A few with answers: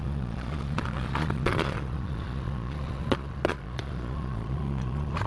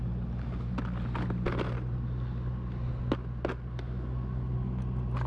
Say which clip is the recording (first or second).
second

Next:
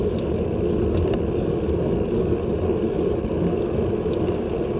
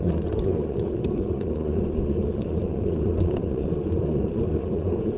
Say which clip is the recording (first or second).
first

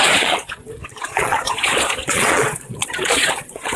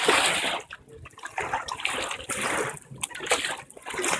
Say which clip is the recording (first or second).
second